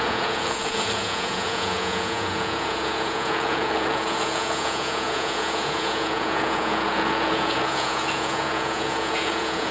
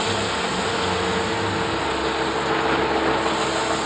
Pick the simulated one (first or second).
first